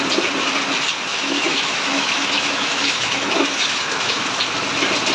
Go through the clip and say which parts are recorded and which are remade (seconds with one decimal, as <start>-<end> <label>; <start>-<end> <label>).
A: 0.0-1.1 recorded; 1.1-4.2 remade; 4.2-5.1 recorded